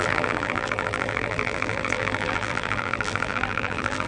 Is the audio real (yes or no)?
no